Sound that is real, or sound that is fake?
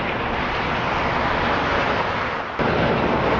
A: real